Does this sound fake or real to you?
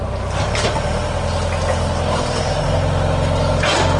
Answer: real